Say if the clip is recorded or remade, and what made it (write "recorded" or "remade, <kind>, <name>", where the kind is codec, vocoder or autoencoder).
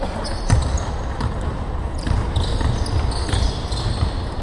recorded